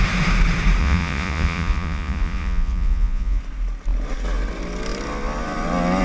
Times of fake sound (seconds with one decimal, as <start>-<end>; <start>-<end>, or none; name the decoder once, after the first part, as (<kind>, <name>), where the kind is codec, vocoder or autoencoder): 0.8-3.4 (vocoder, Vocos)